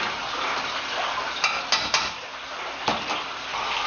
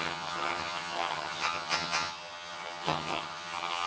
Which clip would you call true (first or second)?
first